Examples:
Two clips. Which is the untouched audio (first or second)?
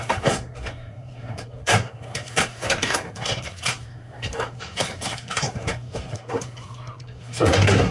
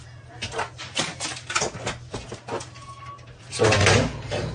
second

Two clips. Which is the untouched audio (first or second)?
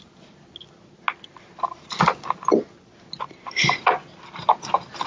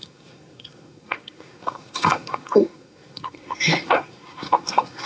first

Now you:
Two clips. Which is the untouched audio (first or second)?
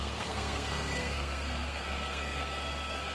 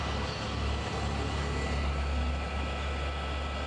second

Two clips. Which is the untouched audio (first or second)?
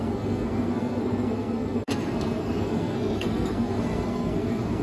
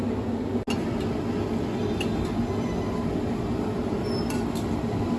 second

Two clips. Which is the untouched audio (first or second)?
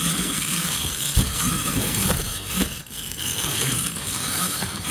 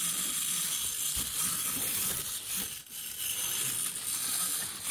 second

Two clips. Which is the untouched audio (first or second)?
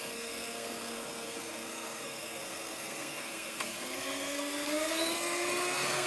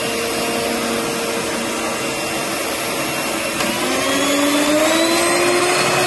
second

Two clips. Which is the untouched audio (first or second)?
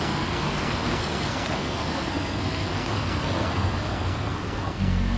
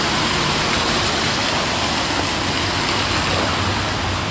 second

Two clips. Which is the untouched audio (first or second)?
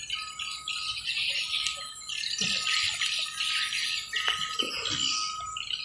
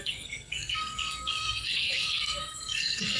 first